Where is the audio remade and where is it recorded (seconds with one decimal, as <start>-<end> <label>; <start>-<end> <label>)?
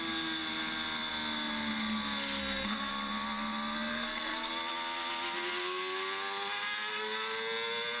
0.0-2.4 recorded; 2.4-2.9 remade; 2.9-3.9 recorded; 3.9-4.5 remade; 4.5-8.0 recorded